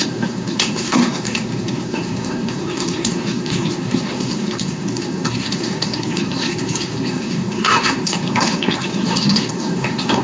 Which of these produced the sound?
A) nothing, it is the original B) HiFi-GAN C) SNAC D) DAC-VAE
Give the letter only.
C